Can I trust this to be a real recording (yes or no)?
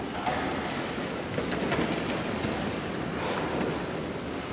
yes